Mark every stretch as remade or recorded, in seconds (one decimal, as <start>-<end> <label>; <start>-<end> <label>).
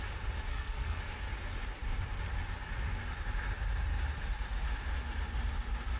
0.0-0.5 recorded; 0.5-1.0 remade; 1.0-6.0 recorded